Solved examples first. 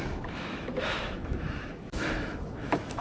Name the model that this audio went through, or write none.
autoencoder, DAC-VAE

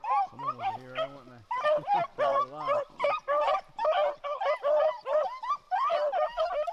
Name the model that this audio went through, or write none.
none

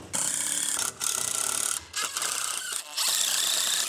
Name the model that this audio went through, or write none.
none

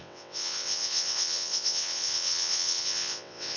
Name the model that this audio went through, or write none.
vocoder, WaveNeXt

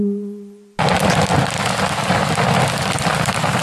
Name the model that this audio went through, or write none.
none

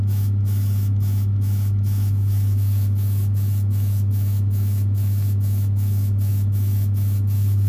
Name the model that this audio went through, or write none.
autoencoder, DAC-VAE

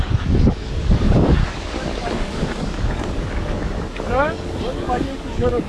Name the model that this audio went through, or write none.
codec, DAC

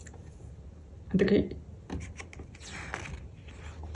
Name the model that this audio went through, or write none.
none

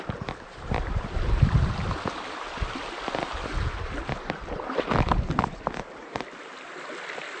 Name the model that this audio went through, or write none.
vocoder, BigVGAN v2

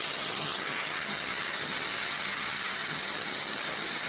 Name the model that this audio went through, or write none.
vocoder, HiFi-GAN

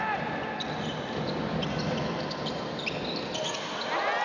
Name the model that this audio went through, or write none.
none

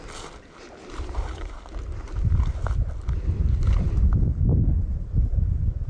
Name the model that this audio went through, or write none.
none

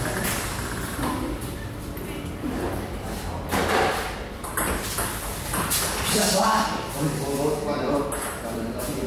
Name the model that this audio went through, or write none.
vocoder, BigVGAN v2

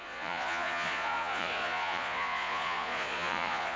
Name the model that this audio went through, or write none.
vocoder, Vocos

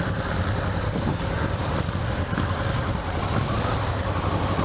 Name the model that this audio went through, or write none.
none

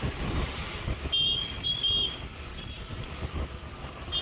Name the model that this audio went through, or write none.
none